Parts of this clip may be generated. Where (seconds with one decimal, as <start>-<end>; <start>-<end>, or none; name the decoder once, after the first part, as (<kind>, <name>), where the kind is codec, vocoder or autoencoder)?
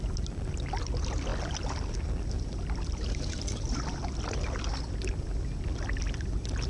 none